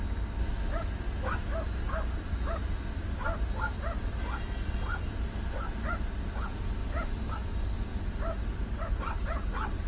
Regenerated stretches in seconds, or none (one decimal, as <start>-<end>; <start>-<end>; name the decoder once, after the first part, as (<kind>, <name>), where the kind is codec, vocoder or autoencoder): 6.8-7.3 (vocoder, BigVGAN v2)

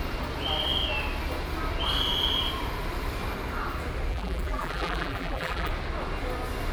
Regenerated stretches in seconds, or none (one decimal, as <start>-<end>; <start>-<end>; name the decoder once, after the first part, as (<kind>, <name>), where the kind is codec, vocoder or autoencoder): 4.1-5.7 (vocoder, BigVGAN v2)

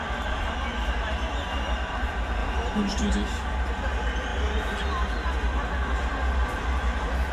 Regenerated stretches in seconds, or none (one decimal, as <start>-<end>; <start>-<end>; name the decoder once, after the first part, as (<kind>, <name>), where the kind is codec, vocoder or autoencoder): 2.4-3.1 (vocoder, BigVGAN v2)

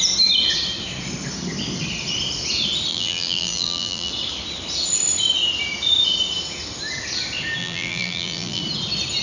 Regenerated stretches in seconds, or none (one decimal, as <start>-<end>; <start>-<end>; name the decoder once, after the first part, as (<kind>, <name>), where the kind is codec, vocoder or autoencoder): 2.9-4.1 (vocoder, BigVGAN v2); 7.6-8.6